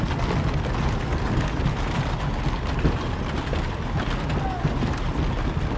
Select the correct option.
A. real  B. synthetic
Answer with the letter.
A